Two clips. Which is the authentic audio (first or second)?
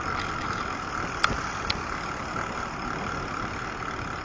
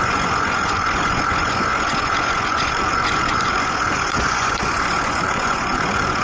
first